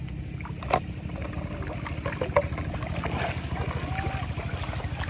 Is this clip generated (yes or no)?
no